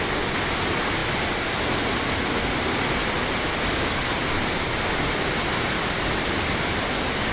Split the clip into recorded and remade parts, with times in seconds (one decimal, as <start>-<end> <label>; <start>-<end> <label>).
0.0-7.3 recorded